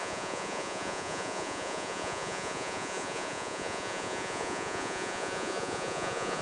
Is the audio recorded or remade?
remade